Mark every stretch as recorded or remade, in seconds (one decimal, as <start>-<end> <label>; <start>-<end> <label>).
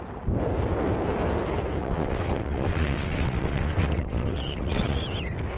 0.0-1.8 recorded; 1.8-5.0 remade; 5.0-5.6 recorded